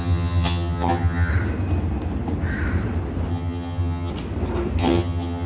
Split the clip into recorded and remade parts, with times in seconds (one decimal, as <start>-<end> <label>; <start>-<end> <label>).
0.0-1.3 remade; 1.3-3.3 recorded; 3.3-4.1 remade; 4.1-4.8 recorded; 4.8-5.5 remade